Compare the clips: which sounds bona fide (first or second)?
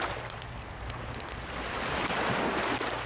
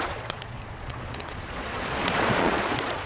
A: first